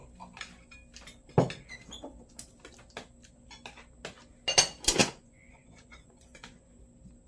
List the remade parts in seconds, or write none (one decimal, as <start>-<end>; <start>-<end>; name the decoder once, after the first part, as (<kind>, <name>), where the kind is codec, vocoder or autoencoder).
5.0-6.8 (vocoder, Vocos)